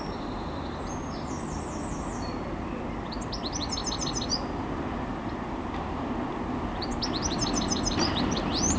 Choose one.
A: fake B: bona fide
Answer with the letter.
B